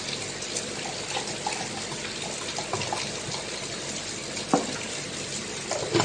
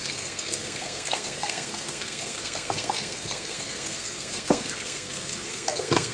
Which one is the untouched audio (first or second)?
first